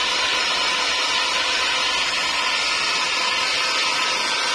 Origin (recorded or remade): recorded